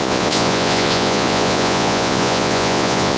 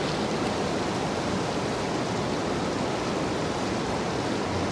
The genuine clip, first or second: second